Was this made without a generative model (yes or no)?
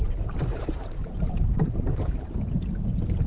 no